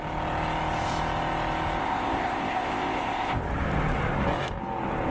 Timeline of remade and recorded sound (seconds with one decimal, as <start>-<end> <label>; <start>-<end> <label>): 0.0-1.8 recorded; 1.8-3.4 remade; 3.4-5.1 recorded